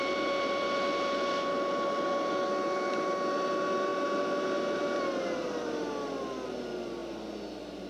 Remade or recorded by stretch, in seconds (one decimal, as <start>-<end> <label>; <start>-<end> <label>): 0.0-7.9 recorded

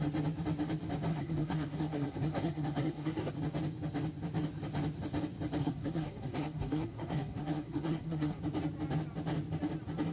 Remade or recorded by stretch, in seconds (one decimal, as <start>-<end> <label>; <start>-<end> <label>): 0.0-1.1 recorded; 1.1-3.3 remade; 3.3-5.6 recorded; 5.6-8.4 remade; 8.4-10.1 recorded

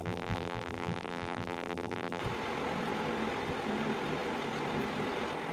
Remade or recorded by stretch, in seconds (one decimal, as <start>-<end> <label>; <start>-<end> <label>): 0.0-2.2 remade; 2.2-5.5 recorded

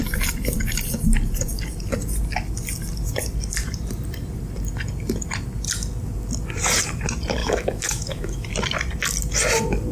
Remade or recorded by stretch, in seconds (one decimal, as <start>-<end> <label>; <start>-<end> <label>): 0.0-7.4 recorded; 7.4-8.5 remade; 8.5-9.9 recorded

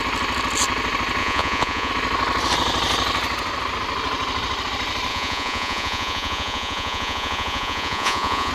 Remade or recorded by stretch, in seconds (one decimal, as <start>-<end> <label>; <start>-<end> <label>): 0.0-1.2 recorded; 1.2-1.9 remade; 1.9-5.1 recorded; 5.1-8.5 remade